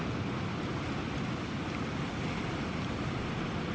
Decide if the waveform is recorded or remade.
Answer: recorded